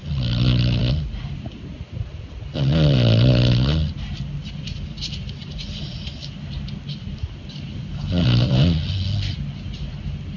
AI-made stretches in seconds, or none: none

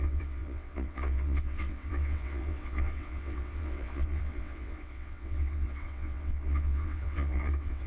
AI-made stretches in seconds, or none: 0.0-7.9 (vocoder, WaveNeXt)

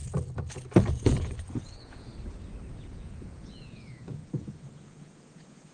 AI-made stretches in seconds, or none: 0.9-2.1 (vocoder, Vocos); 2.8-5.7

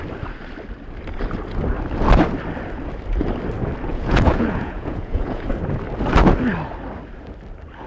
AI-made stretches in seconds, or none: 3.9-5.5 (vocoder, Vocos)

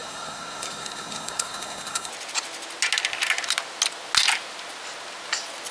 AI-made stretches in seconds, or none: 0.0-2.1 (codec, SNAC)